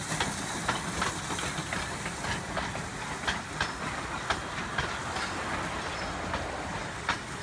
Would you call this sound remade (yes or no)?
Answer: no